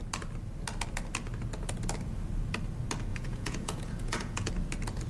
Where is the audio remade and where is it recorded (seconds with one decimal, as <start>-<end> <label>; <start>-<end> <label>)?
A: 0.0-3.1 recorded; 3.1-4.5 remade; 4.5-5.1 recorded